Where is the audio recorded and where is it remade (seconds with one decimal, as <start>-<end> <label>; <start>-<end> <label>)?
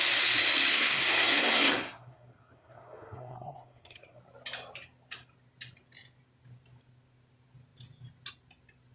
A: 0.0-0.7 recorded; 0.7-4.2 remade; 4.2-8.9 recorded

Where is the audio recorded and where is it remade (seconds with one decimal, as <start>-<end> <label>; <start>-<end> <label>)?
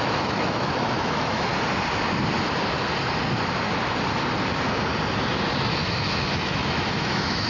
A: 0.0-1.5 remade; 1.5-5.6 recorded; 5.6-7.5 remade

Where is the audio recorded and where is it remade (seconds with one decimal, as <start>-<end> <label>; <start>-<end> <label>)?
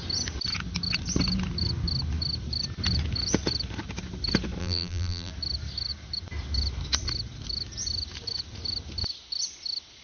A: 0.0-4.6 recorded; 4.6-5.3 remade; 5.3-10.0 recorded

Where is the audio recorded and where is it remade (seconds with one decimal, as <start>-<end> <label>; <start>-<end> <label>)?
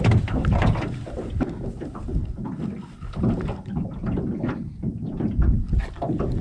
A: 0.0-6.4 recorded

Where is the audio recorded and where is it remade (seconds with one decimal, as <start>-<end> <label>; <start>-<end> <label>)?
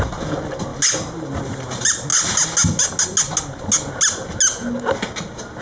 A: 0.0-5.6 recorded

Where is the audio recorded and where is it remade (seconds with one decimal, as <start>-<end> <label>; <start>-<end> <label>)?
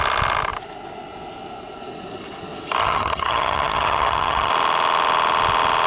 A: 0.0-2.8 recorded; 2.8-4.5 remade; 4.5-5.9 recorded